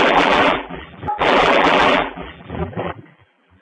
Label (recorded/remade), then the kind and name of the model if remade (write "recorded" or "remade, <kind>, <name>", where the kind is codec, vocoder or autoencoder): remade, vocoder, BigVGAN v2